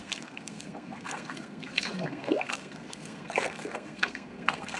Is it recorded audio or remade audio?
remade